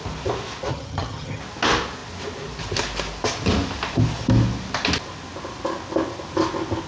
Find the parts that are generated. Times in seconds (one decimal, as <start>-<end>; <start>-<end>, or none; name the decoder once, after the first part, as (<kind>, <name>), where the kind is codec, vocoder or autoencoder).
0.7-1.4 (vocoder, HiFi-GAN)